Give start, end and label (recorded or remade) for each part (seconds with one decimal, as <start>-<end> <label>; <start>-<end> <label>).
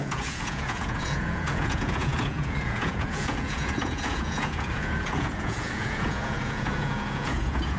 0.0-7.8 remade